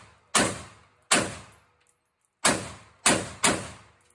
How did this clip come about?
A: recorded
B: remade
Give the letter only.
A